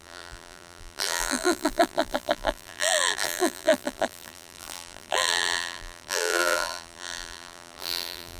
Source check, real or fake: fake